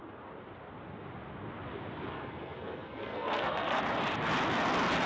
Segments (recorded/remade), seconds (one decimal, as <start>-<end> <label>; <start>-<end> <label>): 0.0-2.1 recorded; 2.1-3.8 remade; 3.8-5.1 recorded